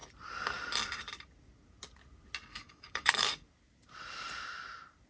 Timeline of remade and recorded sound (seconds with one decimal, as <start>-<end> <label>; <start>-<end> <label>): 0.0-2.5 recorded; 2.5-3.3 remade; 3.3-5.1 recorded